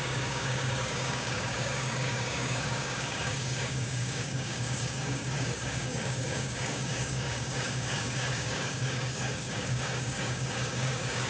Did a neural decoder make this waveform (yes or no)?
yes